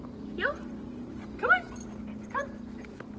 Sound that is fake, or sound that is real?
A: real